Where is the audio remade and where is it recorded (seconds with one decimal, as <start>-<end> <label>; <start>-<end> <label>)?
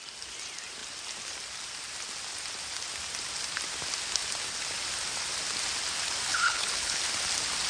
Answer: 0.0-6.3 recorded; 6.3-7.0 remade; 7.0-7.7 recorded